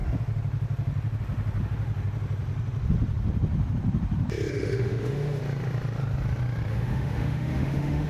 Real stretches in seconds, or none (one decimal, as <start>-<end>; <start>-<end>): 0.0-4.5; 5.4-6.7